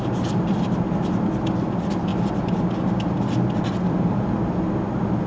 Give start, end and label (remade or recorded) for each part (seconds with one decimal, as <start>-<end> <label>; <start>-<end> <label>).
0.0-5.3 recorded